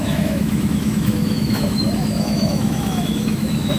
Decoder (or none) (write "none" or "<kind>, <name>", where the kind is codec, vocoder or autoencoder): autoencoder, DAC-VAE